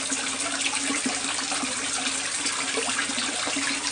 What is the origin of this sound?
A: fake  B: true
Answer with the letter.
B